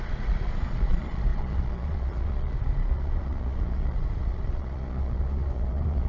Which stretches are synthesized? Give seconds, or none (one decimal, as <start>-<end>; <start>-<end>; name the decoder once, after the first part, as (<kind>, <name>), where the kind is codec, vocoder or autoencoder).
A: 0.0-6.1 (vocoder, Vocos)